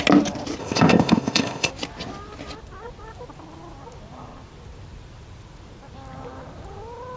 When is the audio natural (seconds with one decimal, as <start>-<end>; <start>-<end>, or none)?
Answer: 0.0-0.6; 1.7-7.2

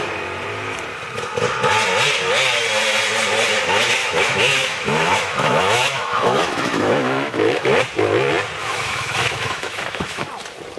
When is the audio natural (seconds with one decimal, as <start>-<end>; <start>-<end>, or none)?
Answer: 0.0-4.0; 7.8-8.6; 10.3-10.8